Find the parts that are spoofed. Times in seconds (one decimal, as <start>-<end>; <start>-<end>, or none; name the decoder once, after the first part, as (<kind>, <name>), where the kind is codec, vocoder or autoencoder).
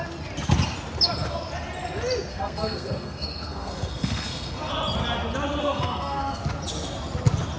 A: 2.3-4.7 (codec, SNAC); 5.6-6.4